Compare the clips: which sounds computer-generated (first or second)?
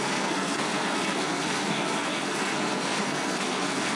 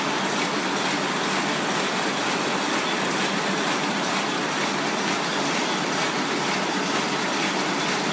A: first